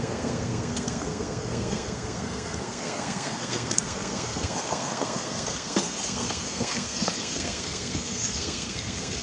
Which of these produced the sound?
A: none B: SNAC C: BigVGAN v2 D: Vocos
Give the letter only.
B